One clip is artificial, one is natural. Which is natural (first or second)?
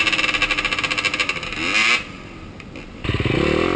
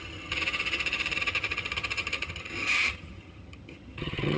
first